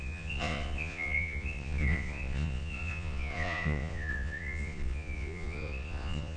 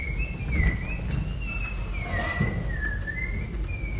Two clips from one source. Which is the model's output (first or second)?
first